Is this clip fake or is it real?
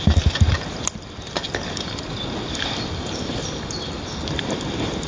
real